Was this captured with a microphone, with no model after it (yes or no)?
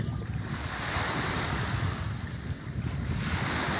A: yes